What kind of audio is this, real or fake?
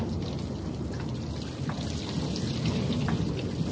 real